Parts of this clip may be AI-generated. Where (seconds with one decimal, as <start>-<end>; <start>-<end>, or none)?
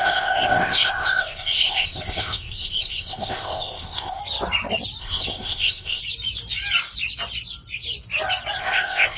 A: 0.0-4.2; 5.0-6.0; 8.6-9.2